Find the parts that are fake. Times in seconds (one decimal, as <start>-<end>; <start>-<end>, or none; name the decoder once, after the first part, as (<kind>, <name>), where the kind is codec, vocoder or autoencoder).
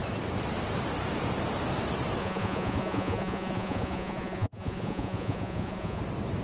2.2-6.0 (vocoder, Vocos)